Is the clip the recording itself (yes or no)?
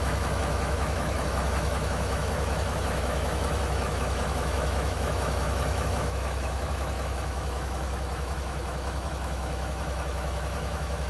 no